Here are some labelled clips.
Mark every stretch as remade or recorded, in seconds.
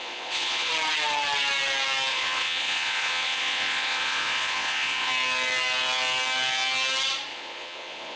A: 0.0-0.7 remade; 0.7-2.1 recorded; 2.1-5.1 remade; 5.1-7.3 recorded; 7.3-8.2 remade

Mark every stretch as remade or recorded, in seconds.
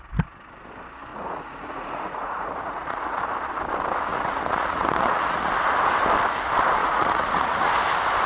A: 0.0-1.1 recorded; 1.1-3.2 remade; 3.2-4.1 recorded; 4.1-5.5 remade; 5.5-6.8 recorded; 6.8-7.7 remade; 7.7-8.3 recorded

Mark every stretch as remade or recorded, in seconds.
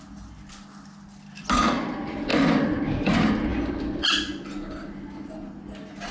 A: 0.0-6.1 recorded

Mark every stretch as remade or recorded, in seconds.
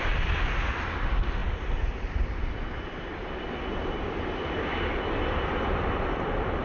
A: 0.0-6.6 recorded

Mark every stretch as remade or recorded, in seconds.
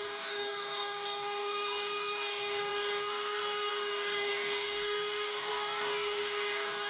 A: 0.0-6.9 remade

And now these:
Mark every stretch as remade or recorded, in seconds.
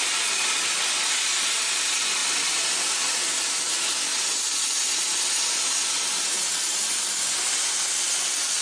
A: 0.0-8.6 recorded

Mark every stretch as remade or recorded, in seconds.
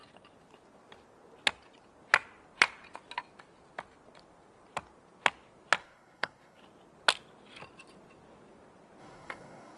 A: 0.0-5.8 recorded; 5.8-6.6 remade; 6.6-9.0 recorded; 9.0-9.8 remade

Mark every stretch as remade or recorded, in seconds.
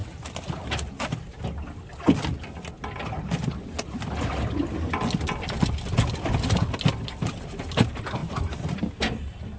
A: 0.0-8.2 recorded; 8.2-8.8 remade; 8.8-9.6 recorded